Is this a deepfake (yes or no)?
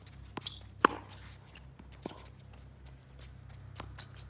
no